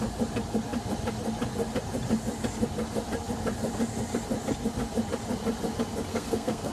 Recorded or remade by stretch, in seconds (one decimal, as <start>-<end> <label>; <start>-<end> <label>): 0.0-6.1 recorded; 6.1-6.7 remade